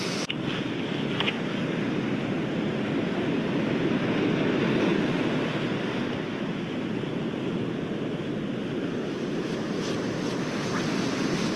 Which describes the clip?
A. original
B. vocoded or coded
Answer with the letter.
A